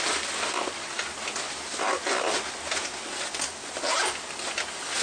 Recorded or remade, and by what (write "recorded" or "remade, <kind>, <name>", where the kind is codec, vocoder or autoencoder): recorded